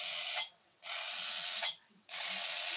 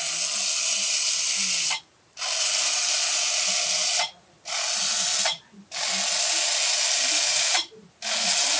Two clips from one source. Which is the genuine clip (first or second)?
second